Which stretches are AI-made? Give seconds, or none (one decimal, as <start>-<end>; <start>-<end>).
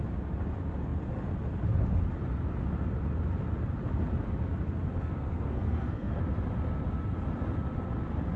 5.0-6.2